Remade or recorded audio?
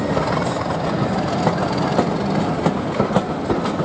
recorded